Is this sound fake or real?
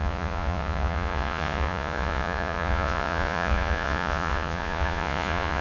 fake